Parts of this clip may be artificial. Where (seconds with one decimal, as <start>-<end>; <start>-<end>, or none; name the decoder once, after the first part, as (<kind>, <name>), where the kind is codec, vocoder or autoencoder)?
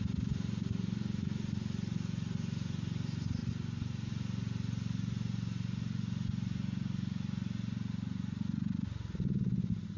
none